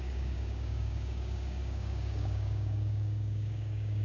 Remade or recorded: remade